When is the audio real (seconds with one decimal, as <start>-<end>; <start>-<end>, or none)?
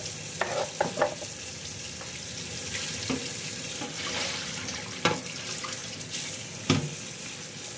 0.0-7.8